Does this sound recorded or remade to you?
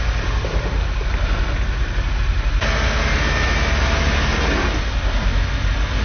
recorded